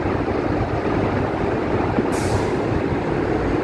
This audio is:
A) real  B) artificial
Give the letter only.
A